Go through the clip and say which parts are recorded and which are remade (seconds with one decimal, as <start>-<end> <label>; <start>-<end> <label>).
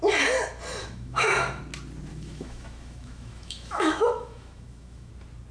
0.0-0.8 recorded; 0.8-1.6 remade; 1.6-2.1 recorded; 2.1-5.1 remade; 5.1-5.5 recorded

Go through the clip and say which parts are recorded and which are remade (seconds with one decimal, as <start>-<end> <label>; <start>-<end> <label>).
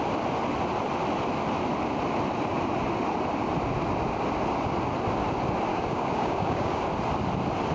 0.0-5.7 recorded; 5.7-6.8 remade; 6.8-7.7 recorded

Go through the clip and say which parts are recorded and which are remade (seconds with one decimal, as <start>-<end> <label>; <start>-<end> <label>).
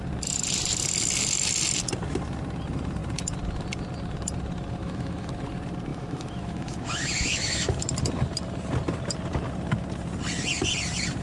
0.0-4.8 recorded; 4.8-5.3 remade; 5.3-5.9 recorded; 5.9-7.8 remade; 7.8-11.2 recorded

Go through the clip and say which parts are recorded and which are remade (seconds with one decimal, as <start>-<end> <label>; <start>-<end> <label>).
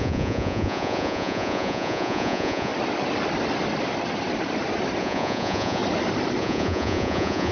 0.0-2.7 remade; 2.7-5.0 recorded; 5.0-5.8 remade; 5.8-6.4 recorded; 6.4-7.5 remade